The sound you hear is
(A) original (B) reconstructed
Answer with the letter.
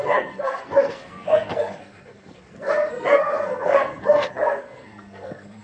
B